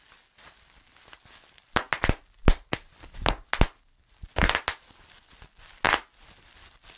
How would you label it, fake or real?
real